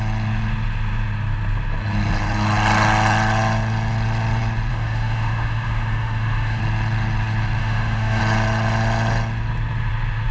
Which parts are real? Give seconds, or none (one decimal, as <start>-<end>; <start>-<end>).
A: 0.0-4.7; 6.6-7.6; 8.2-10.3